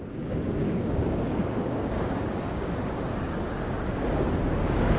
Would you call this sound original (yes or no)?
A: no